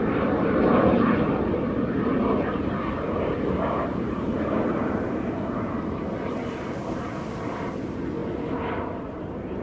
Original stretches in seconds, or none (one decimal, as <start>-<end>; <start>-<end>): 0.0-2.1; 5.9-9.6